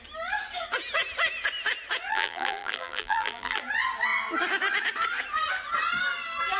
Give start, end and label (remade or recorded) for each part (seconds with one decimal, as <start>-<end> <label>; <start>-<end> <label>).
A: 0.0-2.1 recorded; 2.1-3.6 remade; 3.6-6.6 recorded